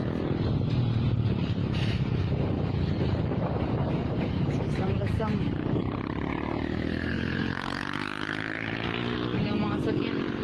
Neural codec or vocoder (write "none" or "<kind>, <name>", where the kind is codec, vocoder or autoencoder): vocoder, BigVGAN v2